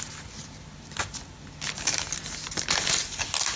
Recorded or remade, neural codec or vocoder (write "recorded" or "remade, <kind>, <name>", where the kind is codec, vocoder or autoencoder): recorded